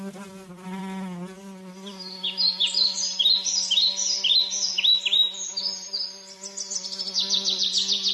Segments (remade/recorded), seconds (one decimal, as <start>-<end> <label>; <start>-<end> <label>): 0.0-8.1 recorded

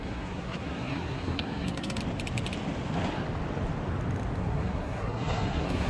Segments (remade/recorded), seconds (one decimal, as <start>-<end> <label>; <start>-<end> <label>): 0.0-2.0 remade; 2.0-4.4 recorded; 4.4-5.9 remade

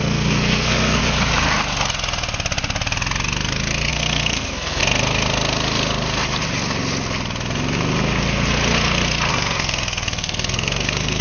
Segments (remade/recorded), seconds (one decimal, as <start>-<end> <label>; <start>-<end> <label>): 0.0-1.0 remade; 1.0-3.9 recorded; 3.9-4.8 remade; 4.8-9.3 recorded; 9.3-11.2 remade

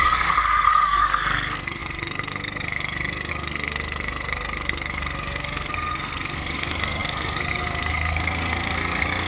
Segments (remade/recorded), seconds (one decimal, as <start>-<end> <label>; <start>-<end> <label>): 0.0-9.3 remade